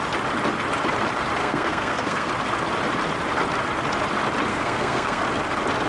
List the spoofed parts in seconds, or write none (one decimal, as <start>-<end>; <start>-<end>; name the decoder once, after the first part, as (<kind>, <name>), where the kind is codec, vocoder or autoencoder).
1.4-2.3 (codec, SNAC); 4.5-5.2